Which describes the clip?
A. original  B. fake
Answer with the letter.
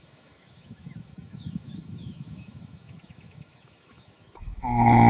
B